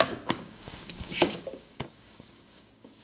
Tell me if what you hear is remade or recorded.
remade